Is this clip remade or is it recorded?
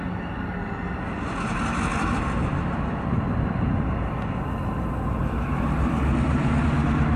recorded